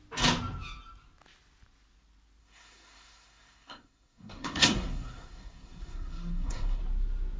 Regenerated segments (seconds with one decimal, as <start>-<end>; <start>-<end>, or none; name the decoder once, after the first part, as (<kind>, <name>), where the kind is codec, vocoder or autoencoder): 2.4-6.8 (codec, SNAC)